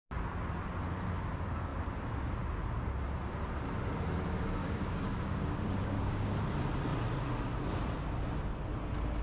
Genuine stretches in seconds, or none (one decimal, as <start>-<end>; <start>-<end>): 0.0-4.6; 6.4-9.2